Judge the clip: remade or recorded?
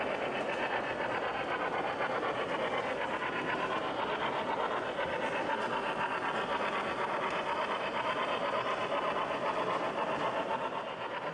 recorded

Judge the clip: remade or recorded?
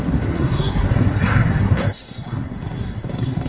remade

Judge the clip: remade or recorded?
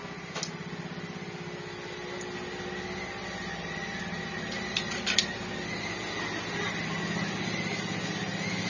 recorded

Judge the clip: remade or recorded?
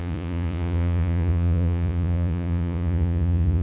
remade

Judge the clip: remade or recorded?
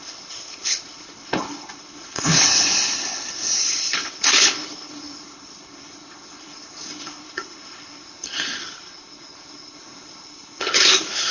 remade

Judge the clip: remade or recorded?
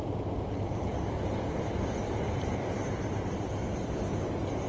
recorded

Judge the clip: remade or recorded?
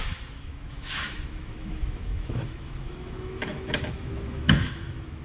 remade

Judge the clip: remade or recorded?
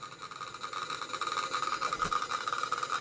remade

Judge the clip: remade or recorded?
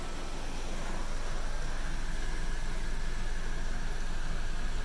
recorded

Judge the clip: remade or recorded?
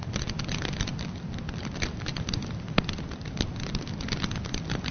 remade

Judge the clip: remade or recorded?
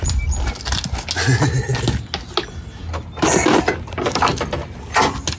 recorded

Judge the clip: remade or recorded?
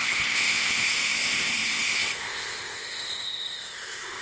remade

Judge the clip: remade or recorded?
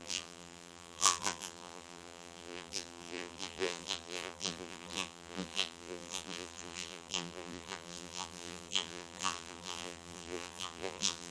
remade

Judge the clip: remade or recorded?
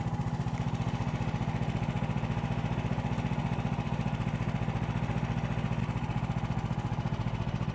recorded